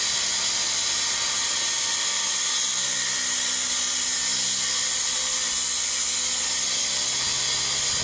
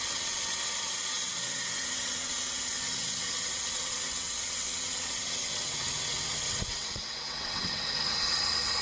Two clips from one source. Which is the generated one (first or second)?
second